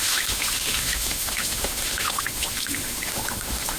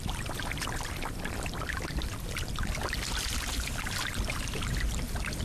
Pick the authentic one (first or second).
second